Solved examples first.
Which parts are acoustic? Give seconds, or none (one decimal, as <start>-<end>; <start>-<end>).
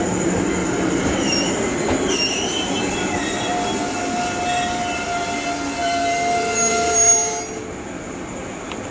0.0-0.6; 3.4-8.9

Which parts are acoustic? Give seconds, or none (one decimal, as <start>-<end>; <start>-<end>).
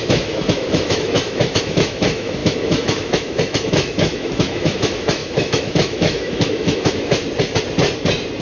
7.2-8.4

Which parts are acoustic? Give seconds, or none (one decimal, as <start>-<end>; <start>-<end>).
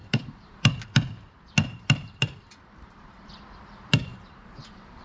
0.7-1.6; 3.3-4.1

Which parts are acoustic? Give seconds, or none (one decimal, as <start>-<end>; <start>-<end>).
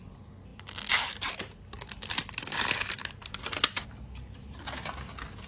0.0-5.5